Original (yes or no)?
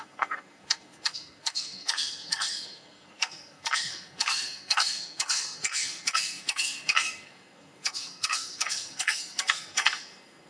no